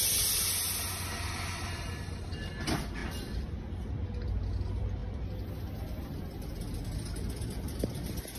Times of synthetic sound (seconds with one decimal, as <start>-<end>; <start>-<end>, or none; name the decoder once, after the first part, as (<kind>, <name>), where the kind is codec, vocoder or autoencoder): none